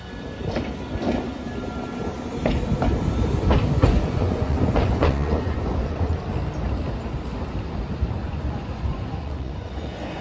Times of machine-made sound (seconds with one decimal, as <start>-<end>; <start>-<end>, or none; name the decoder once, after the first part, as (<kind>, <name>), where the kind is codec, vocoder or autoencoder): 3.8-6.2 (vocoder, Vocos); 8.2-10.2